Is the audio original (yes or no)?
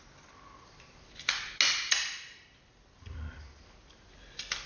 yes